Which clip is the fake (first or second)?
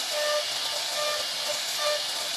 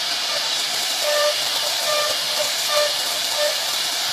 second